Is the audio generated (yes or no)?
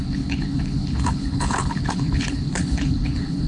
yes